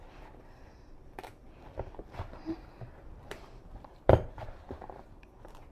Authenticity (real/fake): fake